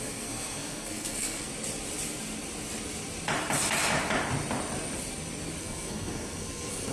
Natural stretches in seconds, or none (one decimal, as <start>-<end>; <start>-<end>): 1.5-5.6